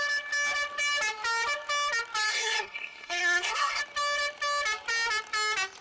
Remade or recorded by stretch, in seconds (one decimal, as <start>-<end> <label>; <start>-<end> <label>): 0.0-2.3 recorded; 2.3-3.8 remade; 3.8-5.8 recorded